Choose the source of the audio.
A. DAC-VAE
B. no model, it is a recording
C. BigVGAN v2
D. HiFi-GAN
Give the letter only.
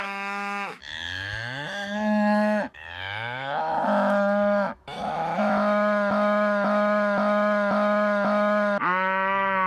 A